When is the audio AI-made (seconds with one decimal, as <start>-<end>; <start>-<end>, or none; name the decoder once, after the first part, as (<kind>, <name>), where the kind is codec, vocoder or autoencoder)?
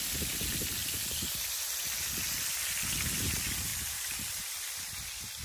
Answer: none